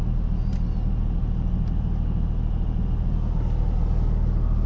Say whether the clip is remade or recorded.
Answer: recorded